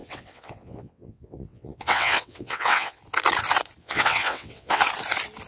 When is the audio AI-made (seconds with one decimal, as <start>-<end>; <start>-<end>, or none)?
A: 0.0-3.0; 3.8-4.8